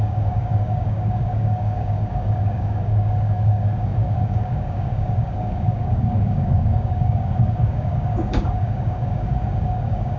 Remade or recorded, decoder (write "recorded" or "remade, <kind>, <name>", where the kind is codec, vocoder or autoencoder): remade, codec, DAC